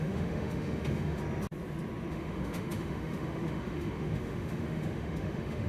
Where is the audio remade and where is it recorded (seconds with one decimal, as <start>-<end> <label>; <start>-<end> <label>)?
0.0-1.2 remade; 1.2-2.1 recorded; 2.1-5.7 remade